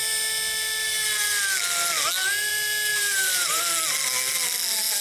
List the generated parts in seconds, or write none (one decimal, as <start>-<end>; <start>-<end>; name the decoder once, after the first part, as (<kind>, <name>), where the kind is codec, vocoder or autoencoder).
2.9-3.6 (vocoder, BigVGAN v2)